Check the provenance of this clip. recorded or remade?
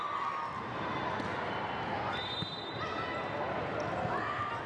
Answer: recorded